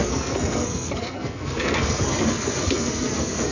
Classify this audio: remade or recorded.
remade